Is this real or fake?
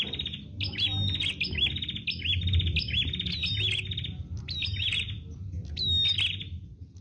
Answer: real